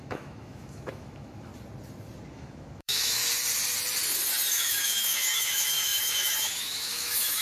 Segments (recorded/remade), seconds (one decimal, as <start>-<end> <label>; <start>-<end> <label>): 0.0-1.5 remade; 1.5-2.3 recorded; 2.3-3.2 remade; 3.2-4.5 recorded; 4.5-7.4 remade